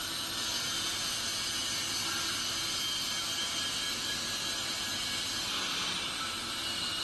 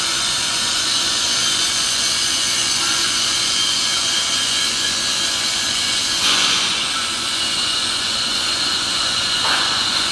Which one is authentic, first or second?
first